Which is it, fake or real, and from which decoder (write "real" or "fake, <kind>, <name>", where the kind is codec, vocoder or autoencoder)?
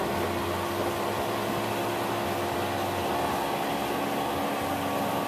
real